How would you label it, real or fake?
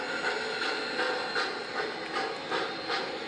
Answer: real